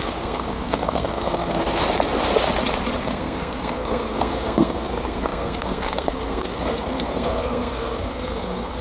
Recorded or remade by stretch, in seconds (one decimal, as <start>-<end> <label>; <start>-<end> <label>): 0.0-1.8 remade; 1.8-3.0 recorded; 3.0-8.8 remade